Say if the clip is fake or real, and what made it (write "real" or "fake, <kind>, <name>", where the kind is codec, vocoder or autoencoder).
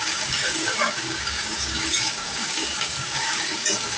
fake, codec, DAC